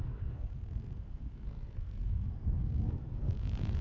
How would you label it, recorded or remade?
remade